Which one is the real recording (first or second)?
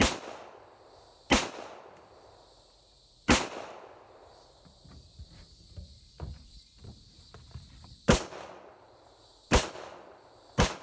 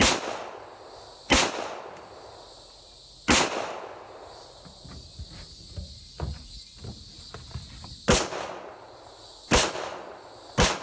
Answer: second